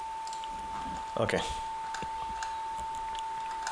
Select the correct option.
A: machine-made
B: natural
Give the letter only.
B